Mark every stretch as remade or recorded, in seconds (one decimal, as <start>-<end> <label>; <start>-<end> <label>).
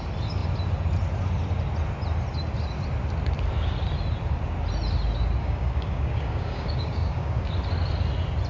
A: 0.0-5.4 recorded; 5.4-7.5 remade; 7.5-8.5 recorded